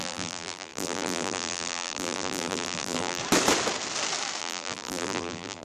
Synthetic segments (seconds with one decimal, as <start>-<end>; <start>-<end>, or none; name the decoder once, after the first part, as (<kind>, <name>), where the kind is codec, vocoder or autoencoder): 0.0-3.2 (vocoder, BigVGAN v2); 4.4-5.6